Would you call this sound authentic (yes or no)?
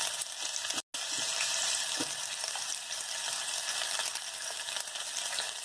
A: yes